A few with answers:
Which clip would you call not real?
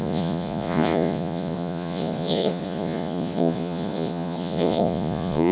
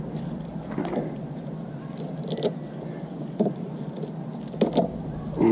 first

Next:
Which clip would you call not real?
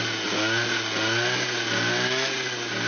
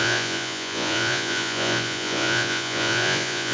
second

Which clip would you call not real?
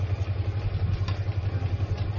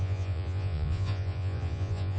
second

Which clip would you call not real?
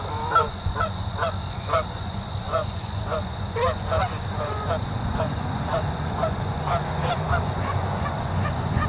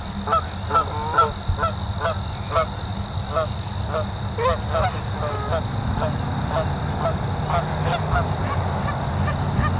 first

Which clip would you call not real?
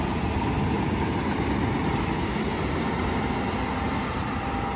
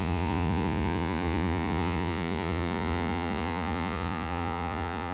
second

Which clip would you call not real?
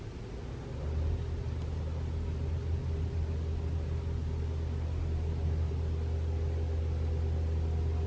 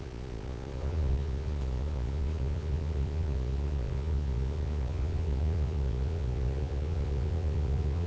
second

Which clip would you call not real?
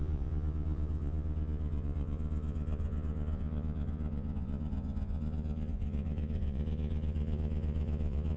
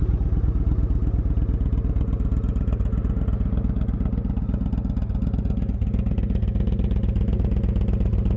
first